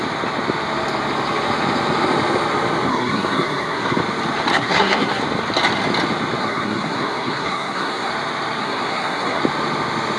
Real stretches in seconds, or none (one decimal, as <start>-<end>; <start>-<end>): 0.0-2.9; 4.0-4.5; 5.2-6.4; 8.1-8.6; 9.4-10.2